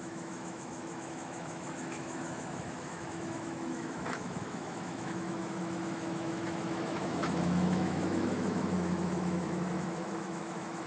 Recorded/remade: remade